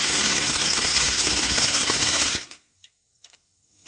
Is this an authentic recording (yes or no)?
no